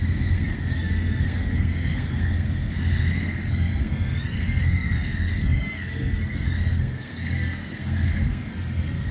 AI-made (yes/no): yes